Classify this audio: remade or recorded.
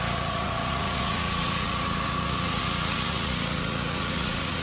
remade